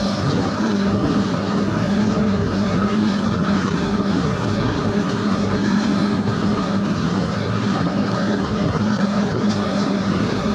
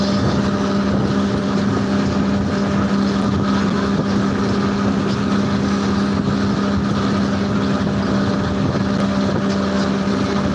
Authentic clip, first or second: second